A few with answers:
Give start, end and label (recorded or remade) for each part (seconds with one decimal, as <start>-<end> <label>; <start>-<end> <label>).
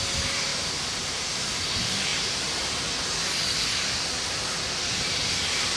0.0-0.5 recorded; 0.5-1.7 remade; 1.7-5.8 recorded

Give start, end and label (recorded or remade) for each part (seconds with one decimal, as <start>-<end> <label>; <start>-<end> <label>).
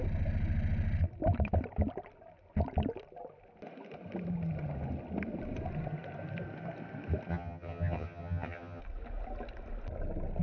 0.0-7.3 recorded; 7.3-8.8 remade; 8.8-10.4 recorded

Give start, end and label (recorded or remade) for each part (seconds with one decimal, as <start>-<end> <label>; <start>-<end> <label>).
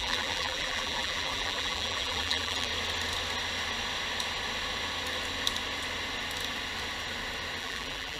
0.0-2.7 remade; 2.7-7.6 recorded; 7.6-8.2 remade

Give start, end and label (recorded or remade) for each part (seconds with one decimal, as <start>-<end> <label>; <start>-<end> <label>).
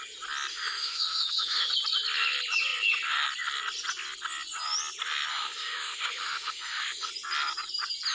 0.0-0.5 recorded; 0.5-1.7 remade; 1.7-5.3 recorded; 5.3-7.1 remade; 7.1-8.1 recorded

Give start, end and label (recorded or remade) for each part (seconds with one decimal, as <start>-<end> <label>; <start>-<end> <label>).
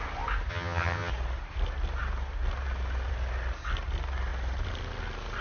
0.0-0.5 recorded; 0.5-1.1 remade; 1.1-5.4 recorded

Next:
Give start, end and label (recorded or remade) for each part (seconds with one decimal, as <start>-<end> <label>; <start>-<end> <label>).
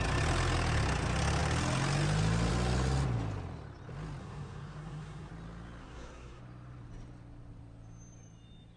0.0-4.2 recorded; 4.2-5.3 remade; 5.3-5.8 recorded; 5.8-6.4 remade; 6.4-8.8 recorded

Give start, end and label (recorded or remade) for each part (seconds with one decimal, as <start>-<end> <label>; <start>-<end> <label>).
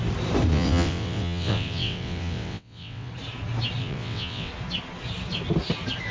0.0-0.5 recorded; 0.5-3.1 remade; 3.1-3.8 recorded; 3.8-4.5 remade; 4.5-6.1 recorded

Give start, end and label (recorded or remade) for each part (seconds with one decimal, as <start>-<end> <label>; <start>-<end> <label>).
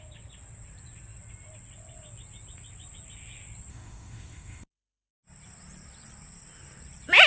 0.0-3.7 recorded; 3.7-5.1 remade; 5.1-7.3 recorded